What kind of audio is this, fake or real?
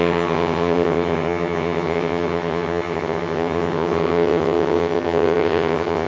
fake